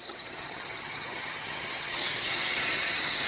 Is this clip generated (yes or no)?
yes